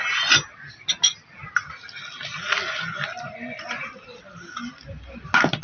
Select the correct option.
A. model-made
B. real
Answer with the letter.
B